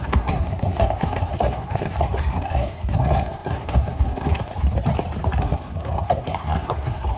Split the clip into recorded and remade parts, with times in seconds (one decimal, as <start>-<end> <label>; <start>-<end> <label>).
0.0-4.5 remade; 4.5-5.4 recorded; 5.4-7.2 remade